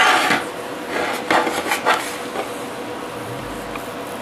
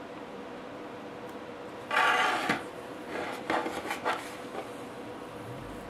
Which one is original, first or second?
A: first